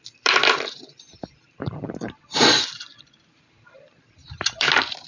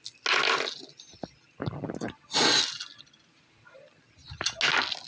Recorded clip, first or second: second